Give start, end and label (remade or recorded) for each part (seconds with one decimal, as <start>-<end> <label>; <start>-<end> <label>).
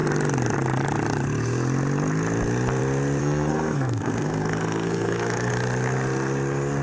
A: 0.0-3.2 recorded; 3.2-5.5 remade; 5.5-6.8 recorded